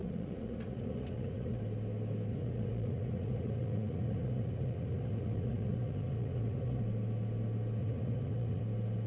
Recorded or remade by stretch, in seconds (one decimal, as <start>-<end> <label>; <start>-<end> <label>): 0.0-1.6 remade; 1.6-2.3 recorded; 2.3-6.8 remade; 6.8-7.8 recorded; 7.8-8.6 remade; 8.6-9.1 recorded